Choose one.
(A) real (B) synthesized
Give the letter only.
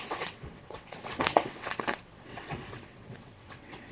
B